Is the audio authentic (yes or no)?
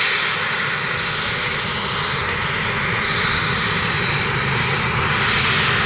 yes